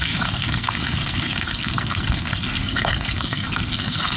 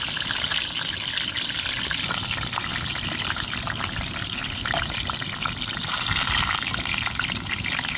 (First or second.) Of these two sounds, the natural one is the second